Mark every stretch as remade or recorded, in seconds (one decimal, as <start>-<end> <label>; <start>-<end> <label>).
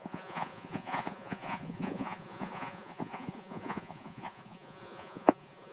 0.0-5.7 remade